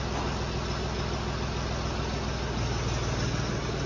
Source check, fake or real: real